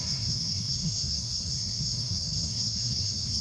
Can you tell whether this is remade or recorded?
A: remade